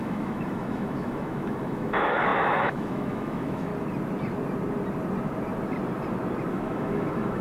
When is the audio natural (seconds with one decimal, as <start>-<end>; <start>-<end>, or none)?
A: 3.7-6.5